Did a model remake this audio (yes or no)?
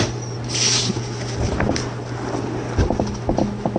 no